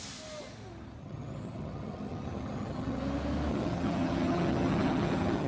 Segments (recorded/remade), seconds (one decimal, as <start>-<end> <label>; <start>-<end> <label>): 0.0-1.0 recorded; 1.0-3.0 remade; 3.0-3.5 recorded; 3.5-5.5 remade